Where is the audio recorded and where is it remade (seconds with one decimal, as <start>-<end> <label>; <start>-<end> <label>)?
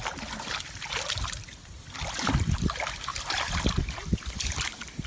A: 0.0-5.1 recorded